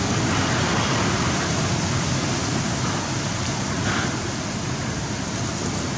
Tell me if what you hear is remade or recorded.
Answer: recorded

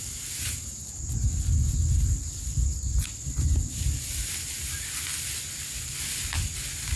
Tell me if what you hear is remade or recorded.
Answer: recorded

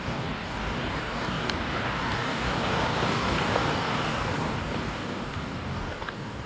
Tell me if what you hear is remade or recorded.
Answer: remade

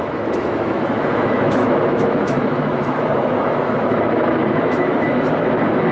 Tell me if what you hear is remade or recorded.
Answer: remade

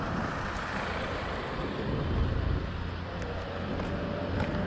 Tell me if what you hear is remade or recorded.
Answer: recorded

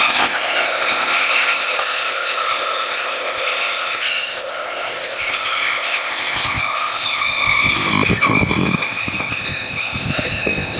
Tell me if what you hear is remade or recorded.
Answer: remade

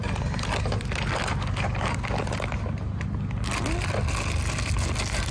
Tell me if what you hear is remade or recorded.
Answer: recorded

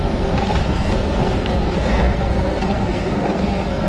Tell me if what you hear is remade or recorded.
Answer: remade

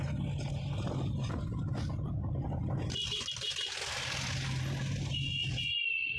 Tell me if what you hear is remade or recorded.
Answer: recorded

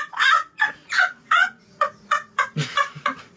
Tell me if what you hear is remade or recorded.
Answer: remade